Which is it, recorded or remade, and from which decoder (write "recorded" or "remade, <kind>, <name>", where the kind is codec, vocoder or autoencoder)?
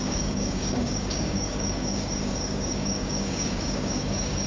remade, codec, DAC